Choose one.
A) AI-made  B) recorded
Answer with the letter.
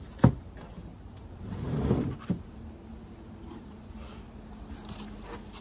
B